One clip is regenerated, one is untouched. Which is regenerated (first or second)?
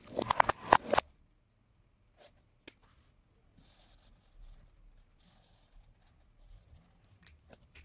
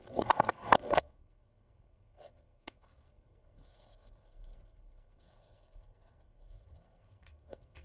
second